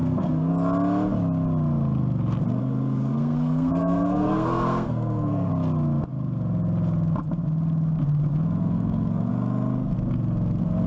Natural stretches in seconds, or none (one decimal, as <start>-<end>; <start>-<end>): 0.5-2.6; 5.5-8.6; 9.3-10.9